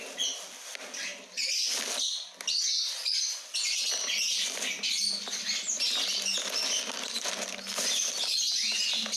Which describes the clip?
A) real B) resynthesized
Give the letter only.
A